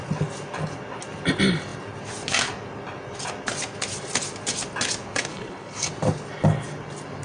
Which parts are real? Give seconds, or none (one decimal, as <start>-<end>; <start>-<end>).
0.0-5.3; 5.9-7.2